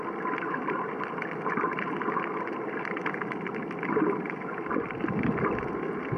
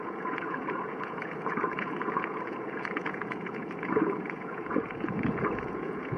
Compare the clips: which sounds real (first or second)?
first